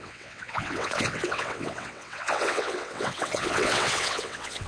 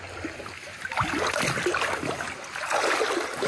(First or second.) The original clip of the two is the second